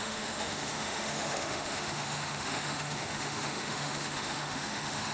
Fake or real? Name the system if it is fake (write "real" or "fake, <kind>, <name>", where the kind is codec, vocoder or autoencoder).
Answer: fake, autoencoder, DAC-VAE